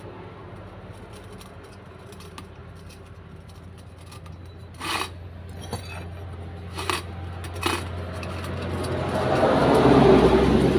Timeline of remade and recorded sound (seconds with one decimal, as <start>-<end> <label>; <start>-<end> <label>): 0.0-0.4 recorded; 0.4-0.9 remade; 0.9-9.6 recorded; 9.6-10.4 remade; 10.4-10.8 recorded